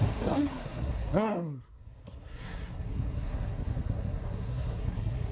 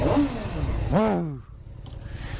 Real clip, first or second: second